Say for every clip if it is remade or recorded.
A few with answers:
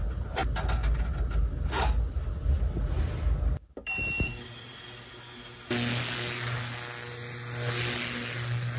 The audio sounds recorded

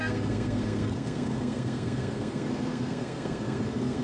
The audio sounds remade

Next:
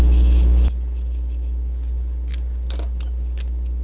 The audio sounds recorded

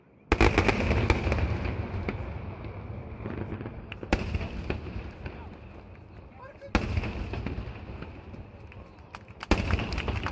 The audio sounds recorded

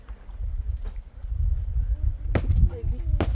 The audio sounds recorded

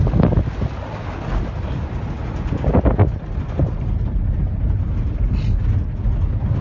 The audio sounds recorded